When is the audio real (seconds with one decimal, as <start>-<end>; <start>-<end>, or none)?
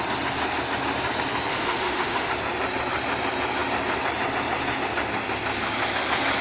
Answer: 0.0-1.5; 2.3-6.4